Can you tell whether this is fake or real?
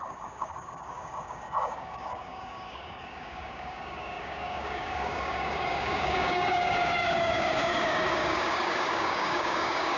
fake